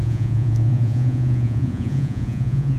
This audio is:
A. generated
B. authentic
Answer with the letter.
A